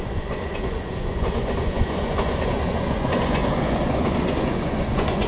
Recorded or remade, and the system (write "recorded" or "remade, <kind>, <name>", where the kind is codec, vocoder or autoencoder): remade, vocoder, Vocos